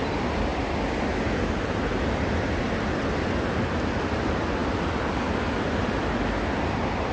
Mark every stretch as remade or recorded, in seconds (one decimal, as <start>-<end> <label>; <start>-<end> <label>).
0.0-7.1 recorded